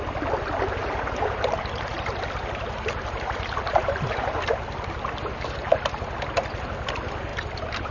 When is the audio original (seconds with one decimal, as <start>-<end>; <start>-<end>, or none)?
0.0-0.8; 4.6-7.3